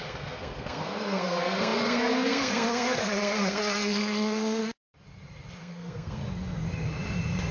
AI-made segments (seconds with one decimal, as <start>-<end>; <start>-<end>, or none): 0.0-4.6; 5.6-6.2